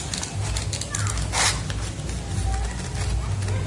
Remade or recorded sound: recorded